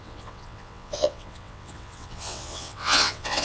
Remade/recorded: remade